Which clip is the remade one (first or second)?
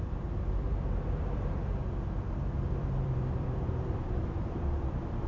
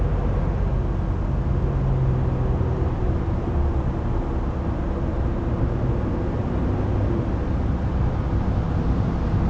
first